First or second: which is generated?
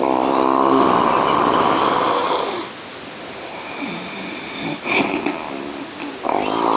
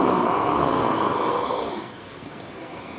second